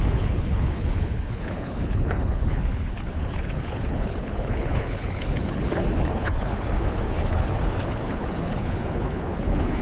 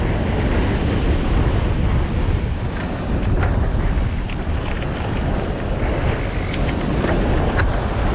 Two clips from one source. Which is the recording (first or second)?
second